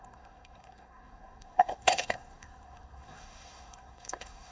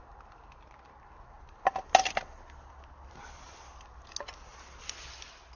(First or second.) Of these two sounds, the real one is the second